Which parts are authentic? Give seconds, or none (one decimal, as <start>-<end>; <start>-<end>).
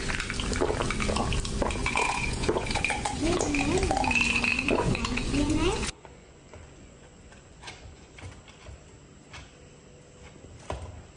0.0-1.8; 3.4-4.5; 8.4-11.2